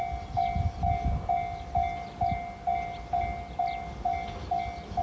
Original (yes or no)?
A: yes